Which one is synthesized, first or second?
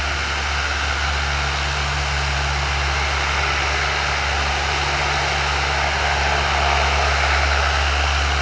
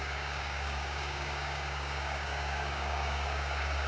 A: second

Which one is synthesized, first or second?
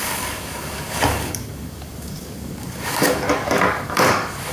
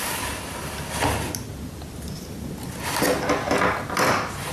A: first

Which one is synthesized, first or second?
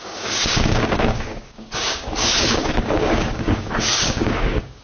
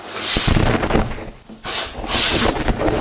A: first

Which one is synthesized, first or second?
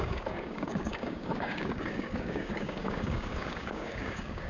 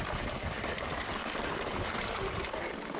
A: first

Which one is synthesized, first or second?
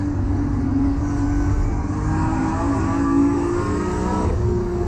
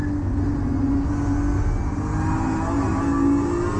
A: first